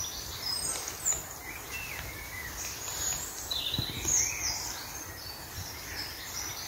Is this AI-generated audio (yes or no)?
yes